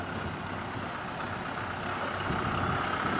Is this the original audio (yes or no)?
yes